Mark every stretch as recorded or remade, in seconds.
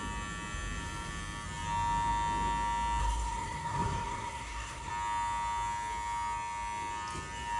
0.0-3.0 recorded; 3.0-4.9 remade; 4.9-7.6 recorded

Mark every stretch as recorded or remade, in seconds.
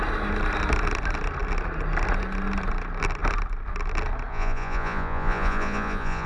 0.0-4.3 recorded; 4.3-6.3 remade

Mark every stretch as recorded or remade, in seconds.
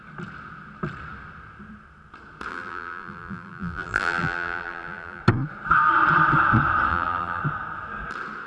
0.0-2.5 recorded; 2.5-5.2 remade; 5.2-6.9 recorded; 6.9-7.4 remade; 7.4-8.5 recorded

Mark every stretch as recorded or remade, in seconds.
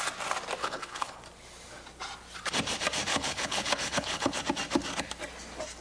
0.0-0.6 recorded; 0.6-1.2 remade; 1.2-3.1 recorded; 3.1-4.4 remade; 4.4-5.8 recorded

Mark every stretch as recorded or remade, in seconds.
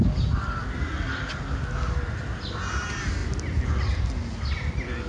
0.0-5.1 recorded